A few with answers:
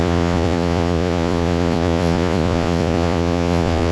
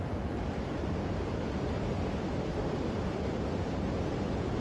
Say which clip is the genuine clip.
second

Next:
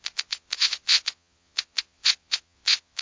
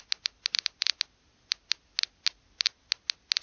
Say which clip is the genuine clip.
second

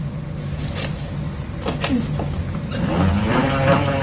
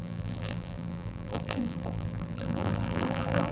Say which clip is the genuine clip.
first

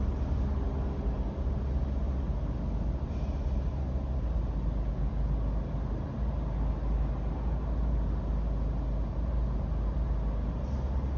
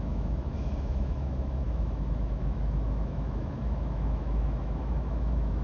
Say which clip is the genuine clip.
first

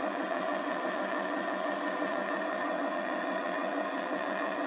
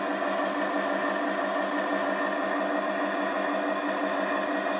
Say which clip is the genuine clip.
second